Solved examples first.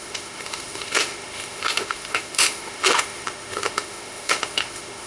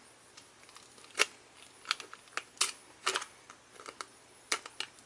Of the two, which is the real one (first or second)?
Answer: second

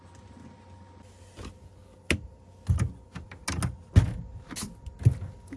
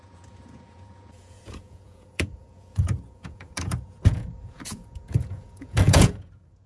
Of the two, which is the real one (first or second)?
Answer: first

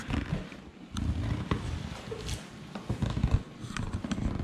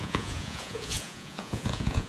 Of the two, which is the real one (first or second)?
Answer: first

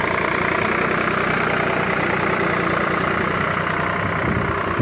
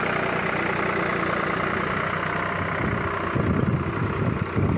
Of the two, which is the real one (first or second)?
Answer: second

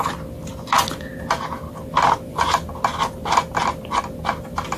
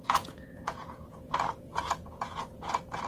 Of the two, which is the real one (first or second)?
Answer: first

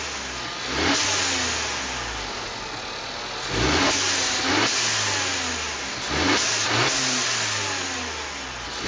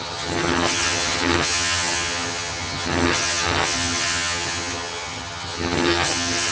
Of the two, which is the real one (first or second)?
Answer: first